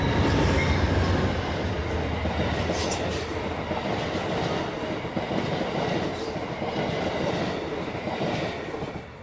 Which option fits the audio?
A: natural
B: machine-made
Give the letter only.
A